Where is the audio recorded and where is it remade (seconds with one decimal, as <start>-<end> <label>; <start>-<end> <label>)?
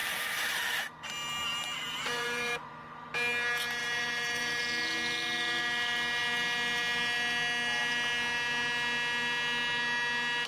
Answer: 0.0-2.7 remade; 2.7-3.8 recorded; 3.8-4.6 remade; 4.6-10.5 recorded